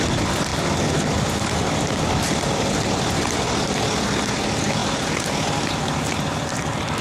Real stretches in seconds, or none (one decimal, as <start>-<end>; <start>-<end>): 0.0-7.0

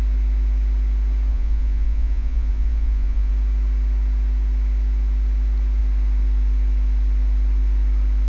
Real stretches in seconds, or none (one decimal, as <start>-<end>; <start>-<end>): 0.0-1.3; 3.3-8.3

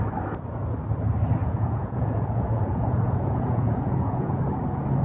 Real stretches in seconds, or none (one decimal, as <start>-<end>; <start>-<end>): 0.0-1.4; 4.4-5.0

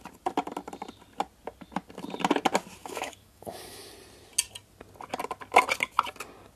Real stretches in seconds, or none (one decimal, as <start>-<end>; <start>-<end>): 0.0-2.8; 3.9-6.6

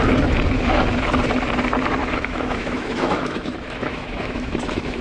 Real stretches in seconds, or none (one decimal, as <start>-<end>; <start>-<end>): 0.0-2.0

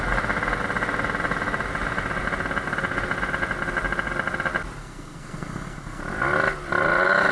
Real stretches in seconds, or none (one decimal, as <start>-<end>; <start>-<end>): 0.0-4.8; 6.0-7.3

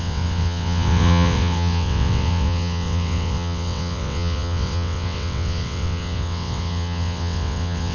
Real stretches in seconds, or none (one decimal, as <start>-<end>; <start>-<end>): none